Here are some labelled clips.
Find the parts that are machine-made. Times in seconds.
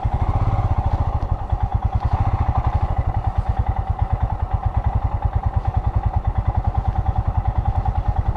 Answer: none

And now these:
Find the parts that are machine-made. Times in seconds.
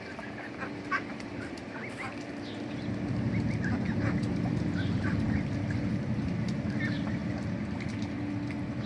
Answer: none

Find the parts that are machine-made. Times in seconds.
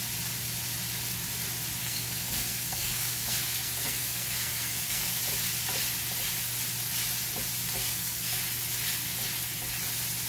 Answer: 1.8-5.2; 7.8-8.4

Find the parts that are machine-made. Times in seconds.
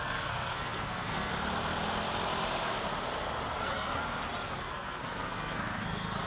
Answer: 0.0-1.3; 3.6-4.0; 4.6-6.3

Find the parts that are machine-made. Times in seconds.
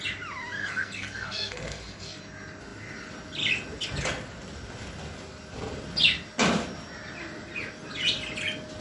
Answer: 0.6-2.2